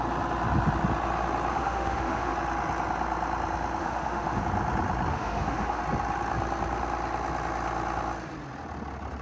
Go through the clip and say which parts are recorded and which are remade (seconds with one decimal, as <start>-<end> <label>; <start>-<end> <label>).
0.0-1.5 recorded; 1.5-2.3 remade; 2.3-3.8 recorded; 3.8-4.4 remade; 4.4-5.1 recorded; 5.1-5.8 remade; 5.8-9.2 recorded

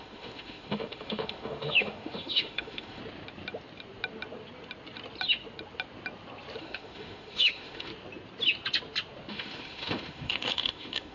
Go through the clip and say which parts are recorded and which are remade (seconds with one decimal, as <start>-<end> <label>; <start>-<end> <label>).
0.0-3.0 remade; 3.0-6.6 recorded; 6.6-7.9 remade; 7.9-9.3 recorded; 9.3-11.1 remade

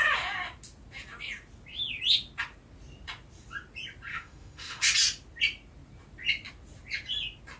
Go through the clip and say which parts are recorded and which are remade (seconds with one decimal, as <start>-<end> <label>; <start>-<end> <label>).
0.0-4.1 recorded; 4.1-4.8 remade; 4.8-7.6 recorded

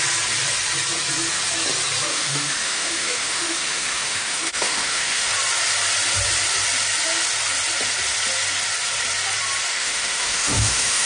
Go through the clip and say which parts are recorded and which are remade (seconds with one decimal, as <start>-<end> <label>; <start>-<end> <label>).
0.0-2.1 recorded; 2.1-5.3 remade; 5.3-9.7 recorded; 9.7-11.1 remade

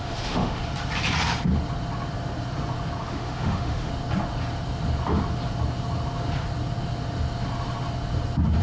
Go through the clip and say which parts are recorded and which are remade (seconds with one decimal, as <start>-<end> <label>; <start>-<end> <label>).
0.0-0.6 remade; 0.6-3.0 recorded; 3.0-3.9 remade; 3.9-8.6 recorded